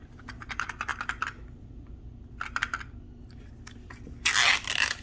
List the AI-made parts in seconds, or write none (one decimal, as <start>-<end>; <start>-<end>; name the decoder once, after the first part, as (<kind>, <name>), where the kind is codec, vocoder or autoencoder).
none